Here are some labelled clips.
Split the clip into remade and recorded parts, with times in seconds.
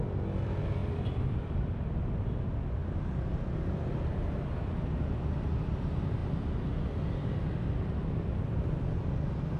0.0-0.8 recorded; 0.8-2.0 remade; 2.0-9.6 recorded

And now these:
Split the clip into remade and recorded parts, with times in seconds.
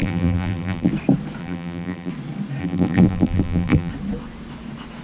0.0-0.9 remade; 0.9-1.4 recorded; 1.4-2.1 remade; 2.1-2.6 recorded; 2.6-3.9 remade; 3.9-5.0 recorded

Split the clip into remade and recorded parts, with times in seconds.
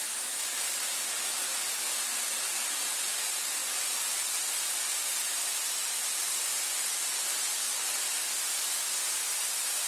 0.0-9.9 recorded